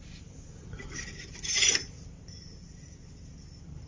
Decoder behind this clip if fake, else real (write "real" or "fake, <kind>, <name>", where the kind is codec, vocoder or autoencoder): real